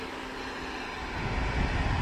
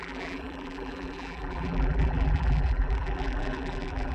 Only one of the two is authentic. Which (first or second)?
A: first